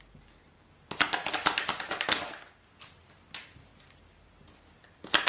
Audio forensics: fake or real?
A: real